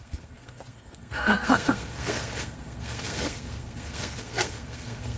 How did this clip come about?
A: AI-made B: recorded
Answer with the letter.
A